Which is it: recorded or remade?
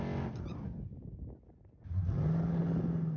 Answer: recorded